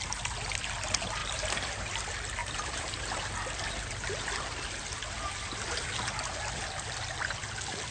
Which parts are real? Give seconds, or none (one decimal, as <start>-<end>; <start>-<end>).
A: 0.0-1.2; 1.7-2.4; 3.2-7.9

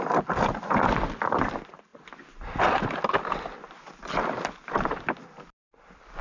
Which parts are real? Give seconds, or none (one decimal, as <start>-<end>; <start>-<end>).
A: 0.0-6.2

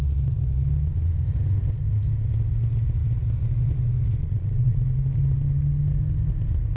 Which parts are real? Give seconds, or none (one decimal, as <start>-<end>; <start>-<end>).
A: 0.0-4.2; 4.8-6.8

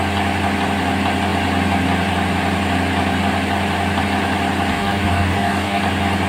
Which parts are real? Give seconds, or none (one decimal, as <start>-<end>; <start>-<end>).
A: 0.0-4.7; 5.8-6.3